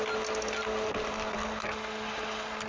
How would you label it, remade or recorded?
recorded